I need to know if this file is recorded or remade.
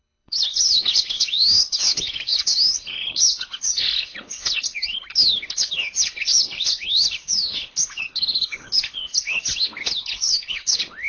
remade